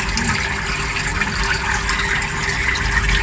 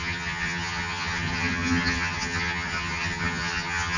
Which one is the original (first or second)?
first